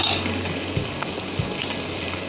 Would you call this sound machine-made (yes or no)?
no